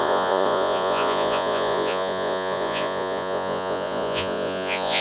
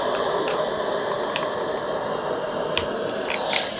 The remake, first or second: first